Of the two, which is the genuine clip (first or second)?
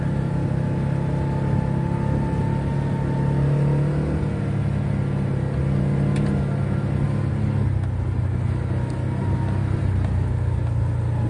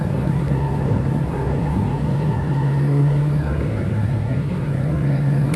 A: first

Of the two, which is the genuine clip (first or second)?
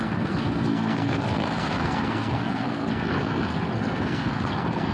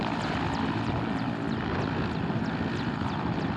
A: second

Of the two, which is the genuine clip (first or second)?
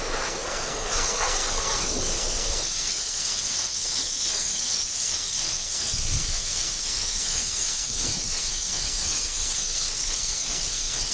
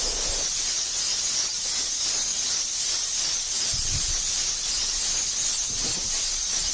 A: second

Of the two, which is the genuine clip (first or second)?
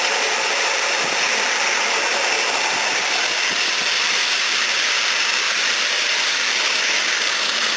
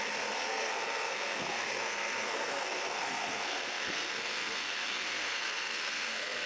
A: first